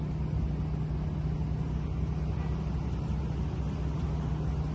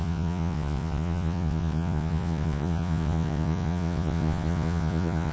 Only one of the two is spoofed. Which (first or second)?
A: second